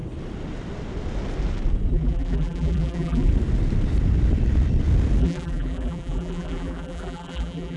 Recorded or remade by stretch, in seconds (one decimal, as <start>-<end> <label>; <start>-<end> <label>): 0.0-1.9 recorded; 1.9-3.3 remade; 3.3-5.2 recorded; 5.2-7.8 remade